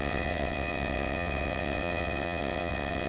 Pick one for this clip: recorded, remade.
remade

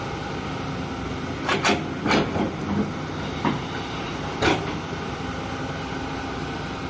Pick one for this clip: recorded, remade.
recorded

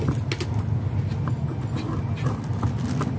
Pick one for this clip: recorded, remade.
recorded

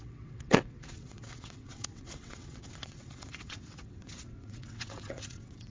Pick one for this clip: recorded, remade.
remade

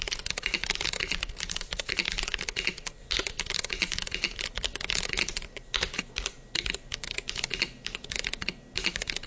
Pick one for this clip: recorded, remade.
recorded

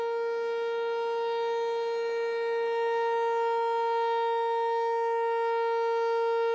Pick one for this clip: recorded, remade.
recorded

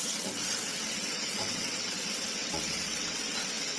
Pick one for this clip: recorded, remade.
remade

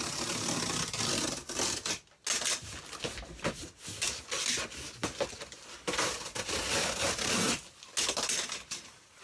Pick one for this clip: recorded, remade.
recorded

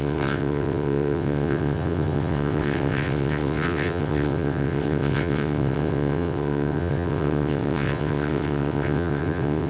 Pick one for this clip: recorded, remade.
remade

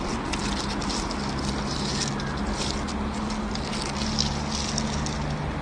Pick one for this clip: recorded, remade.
recorded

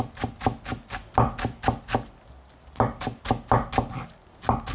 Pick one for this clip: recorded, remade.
recorded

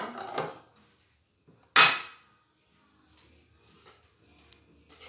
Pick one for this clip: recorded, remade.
recorded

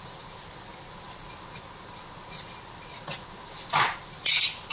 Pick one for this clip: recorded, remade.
recorded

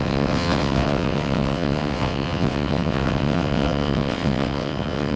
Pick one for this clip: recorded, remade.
remade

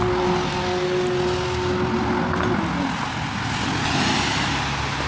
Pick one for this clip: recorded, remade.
recorded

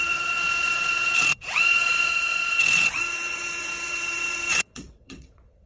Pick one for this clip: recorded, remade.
remade